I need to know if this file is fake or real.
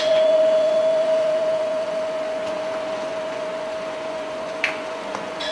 fake